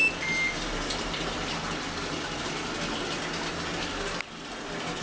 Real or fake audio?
real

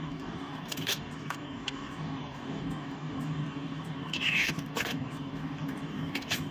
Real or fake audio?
fake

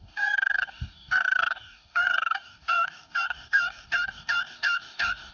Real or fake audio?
fake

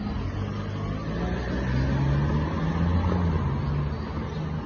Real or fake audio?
real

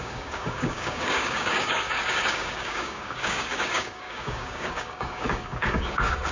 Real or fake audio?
fake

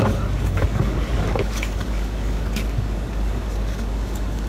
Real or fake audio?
fake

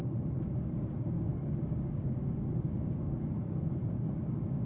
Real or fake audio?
fake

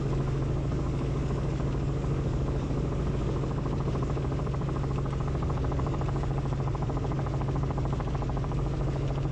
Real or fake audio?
fake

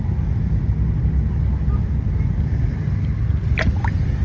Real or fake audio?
real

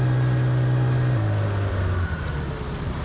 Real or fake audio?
real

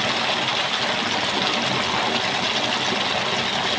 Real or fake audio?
real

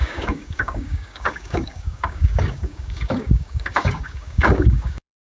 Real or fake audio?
fake